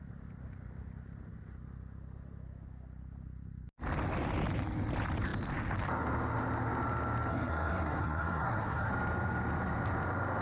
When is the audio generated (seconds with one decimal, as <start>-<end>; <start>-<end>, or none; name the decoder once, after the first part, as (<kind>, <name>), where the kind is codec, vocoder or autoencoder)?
7.3-8.9 (codec, SNAC)